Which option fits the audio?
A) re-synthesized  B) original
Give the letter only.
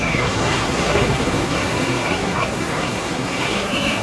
A